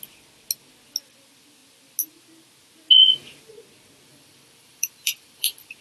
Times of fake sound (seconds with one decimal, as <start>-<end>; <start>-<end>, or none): 4.1-5.8